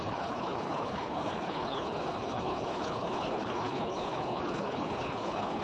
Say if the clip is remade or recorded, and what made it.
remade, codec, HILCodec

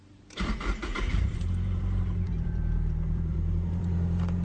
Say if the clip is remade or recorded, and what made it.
remade, vocoder, BigVGAN v2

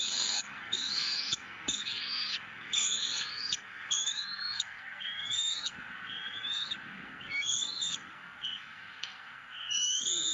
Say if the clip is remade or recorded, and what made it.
remade, codec, SNAC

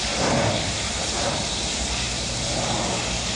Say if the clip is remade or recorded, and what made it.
recorded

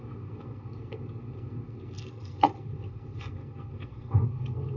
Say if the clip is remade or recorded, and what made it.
remade, codec, SNAC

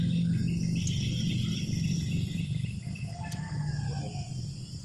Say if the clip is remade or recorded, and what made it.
recorded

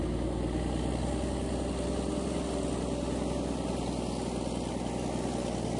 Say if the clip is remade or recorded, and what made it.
recorded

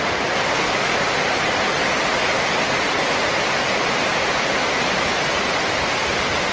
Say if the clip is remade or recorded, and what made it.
recorded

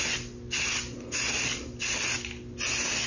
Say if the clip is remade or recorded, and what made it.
recorded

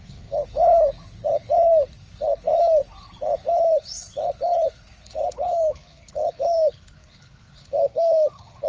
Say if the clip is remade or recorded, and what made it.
remade, codec, HILCodec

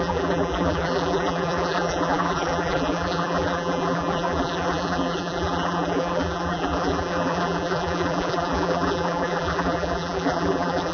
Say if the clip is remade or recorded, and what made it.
remade, vocoder, BigVGAN v2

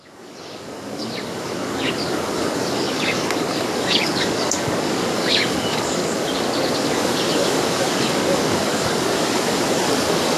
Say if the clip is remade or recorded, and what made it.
remade, codec, DAC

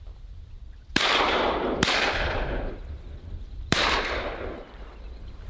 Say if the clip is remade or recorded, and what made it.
remade, vocoder, BigVGAN v2